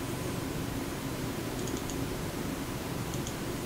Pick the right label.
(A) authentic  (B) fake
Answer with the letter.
B